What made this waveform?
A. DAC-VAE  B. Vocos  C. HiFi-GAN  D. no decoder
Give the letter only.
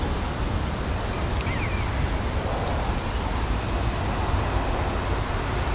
D